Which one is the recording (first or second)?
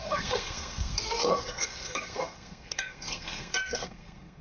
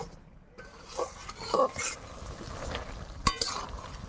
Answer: second